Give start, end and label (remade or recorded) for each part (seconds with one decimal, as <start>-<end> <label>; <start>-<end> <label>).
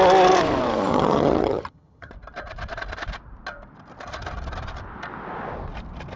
0.0-0.9 recorded; 0.9-2.1 remade; 2.1-6.2 recorded